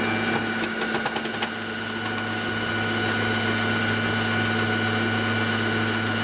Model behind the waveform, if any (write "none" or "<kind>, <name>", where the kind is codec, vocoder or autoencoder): none